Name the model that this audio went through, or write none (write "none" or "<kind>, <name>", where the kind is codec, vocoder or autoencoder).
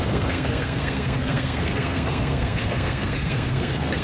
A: codec, SNAC